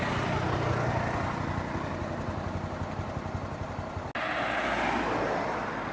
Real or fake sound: real